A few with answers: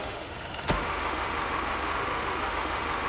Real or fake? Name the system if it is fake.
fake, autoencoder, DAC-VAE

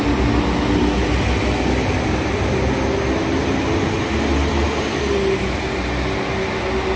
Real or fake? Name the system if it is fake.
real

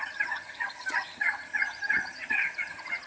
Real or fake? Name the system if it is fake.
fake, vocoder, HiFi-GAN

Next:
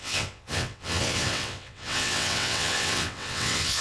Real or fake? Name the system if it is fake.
fake, vocoder, WaveNeXt